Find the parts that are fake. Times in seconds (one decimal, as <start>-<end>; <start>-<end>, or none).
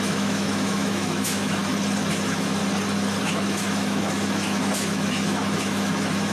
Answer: 0.0-1.6; 2.1-2.6; 3.2-6.3